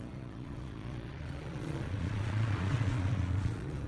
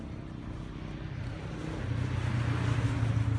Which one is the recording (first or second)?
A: second